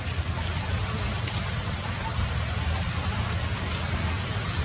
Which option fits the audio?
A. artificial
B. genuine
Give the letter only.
B